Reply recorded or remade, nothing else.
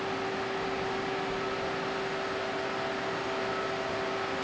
recorded